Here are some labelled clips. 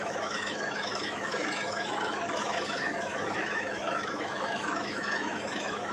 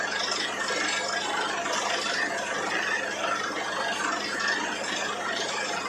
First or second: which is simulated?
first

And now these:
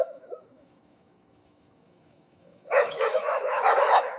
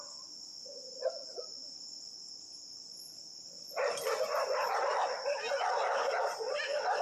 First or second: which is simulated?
first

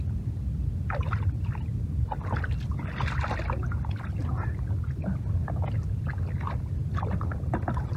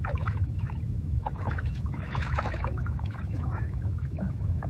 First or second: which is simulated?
second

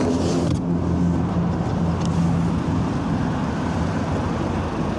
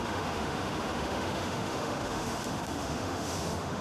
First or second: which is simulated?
second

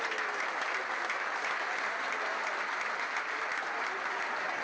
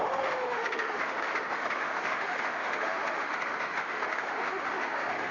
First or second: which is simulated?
second